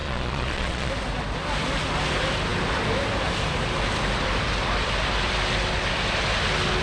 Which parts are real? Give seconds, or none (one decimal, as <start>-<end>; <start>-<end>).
0.9-6.8